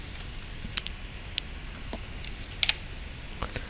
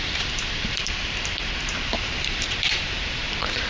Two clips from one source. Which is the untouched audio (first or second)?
first